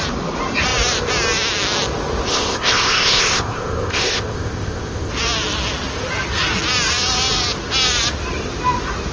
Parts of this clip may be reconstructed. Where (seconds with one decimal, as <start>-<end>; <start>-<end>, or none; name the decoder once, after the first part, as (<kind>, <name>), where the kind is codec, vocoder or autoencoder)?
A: 2.3-5.1 (codec, ZipCodec)